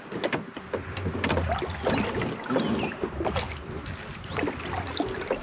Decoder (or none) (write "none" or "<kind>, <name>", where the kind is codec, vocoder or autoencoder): none